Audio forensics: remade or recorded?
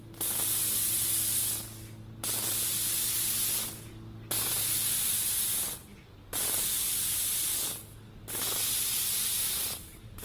recorded